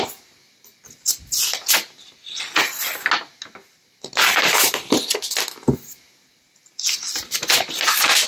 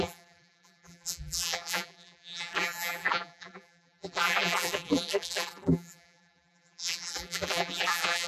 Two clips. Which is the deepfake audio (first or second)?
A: second